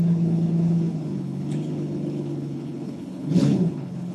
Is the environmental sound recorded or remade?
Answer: remade